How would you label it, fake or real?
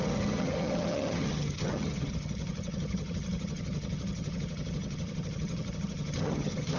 fake